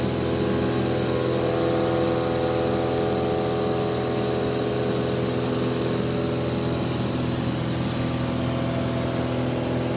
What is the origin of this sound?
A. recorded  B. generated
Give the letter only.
A